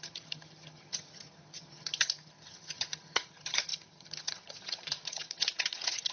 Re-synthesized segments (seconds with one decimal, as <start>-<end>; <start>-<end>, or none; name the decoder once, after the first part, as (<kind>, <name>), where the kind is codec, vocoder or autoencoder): 0.0-6.1 (vocoder, HiFi-GAN)